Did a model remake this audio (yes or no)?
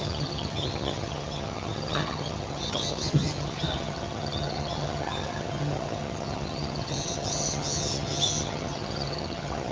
yes